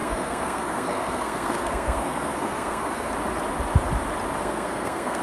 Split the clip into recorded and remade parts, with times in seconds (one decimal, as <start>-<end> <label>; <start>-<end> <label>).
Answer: 0.0-3.1 remade; 3.1-4.4 recorded; 4.4-5.2 remade